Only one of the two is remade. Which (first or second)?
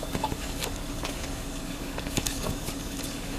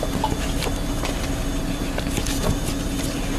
first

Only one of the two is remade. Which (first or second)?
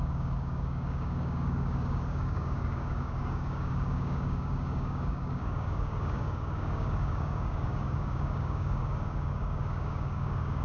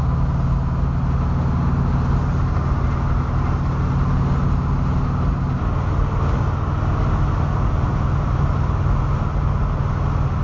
first